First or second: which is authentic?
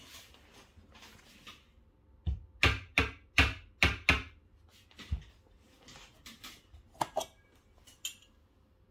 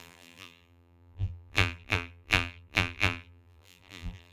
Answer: first